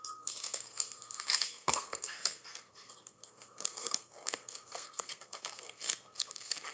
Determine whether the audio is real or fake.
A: fake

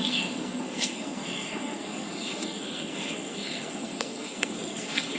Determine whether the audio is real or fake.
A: fake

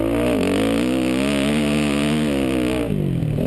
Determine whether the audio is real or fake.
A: real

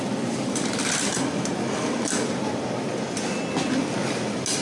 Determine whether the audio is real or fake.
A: real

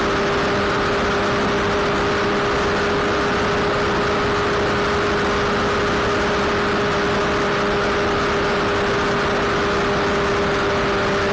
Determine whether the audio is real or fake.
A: real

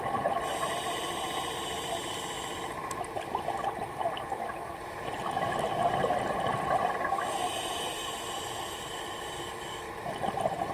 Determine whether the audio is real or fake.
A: real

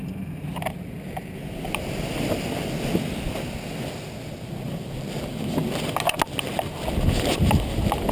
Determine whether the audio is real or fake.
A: real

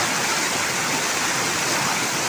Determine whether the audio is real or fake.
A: real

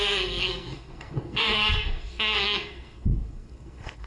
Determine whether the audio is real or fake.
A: fake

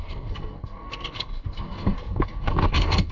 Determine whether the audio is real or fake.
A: fake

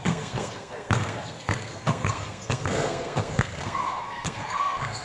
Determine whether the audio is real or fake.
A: fake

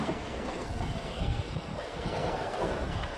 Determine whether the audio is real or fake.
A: fake